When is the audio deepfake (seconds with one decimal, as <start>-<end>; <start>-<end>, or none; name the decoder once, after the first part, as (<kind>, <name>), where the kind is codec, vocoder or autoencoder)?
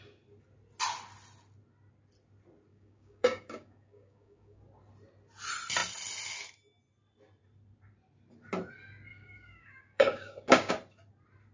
2.7-4.6 (codec, DAC); 9.1-10.7